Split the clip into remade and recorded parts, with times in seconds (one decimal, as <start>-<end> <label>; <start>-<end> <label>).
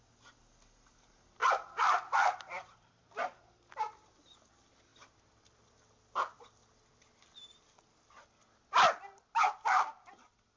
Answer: 0.0-1.4 recorded; 1.4-4.0 remade; 4.0-10.6 recorded